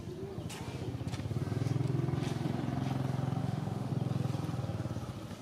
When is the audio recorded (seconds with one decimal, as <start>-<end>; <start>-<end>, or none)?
0.0-3.4; 3.9-5.4